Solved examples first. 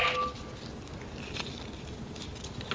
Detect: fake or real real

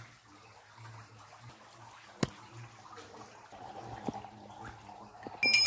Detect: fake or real real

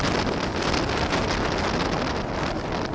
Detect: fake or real real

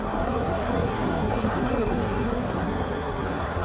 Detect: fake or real fake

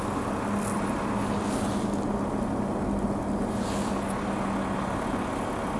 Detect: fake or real real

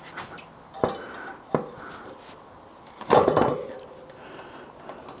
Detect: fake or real real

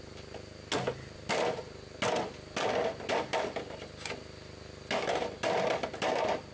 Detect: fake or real real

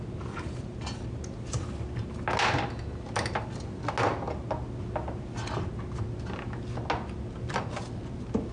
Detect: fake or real real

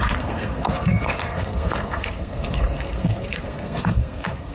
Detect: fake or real fake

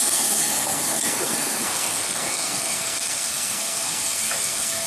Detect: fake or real fake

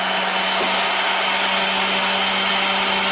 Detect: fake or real real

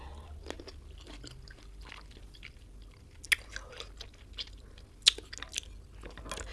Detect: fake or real real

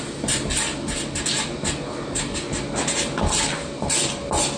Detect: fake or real real